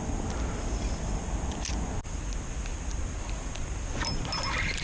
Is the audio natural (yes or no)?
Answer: yes